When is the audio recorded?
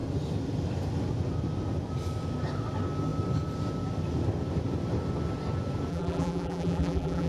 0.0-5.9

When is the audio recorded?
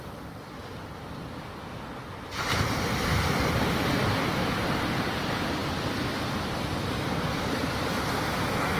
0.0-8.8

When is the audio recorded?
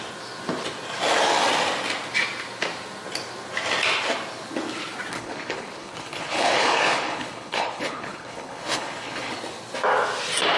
0.0-5.1; 9.3-10.6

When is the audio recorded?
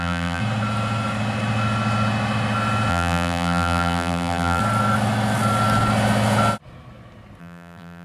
0.4-2.9; 4.6-7.4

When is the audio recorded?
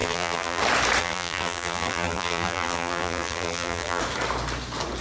0.6-1.0; 4.0-5.0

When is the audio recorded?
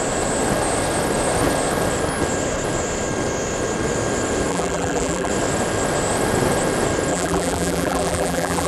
0.0-4.5; 5.3-7.1